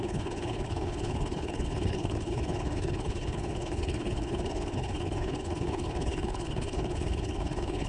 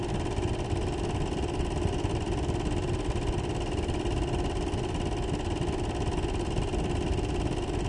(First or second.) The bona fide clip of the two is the second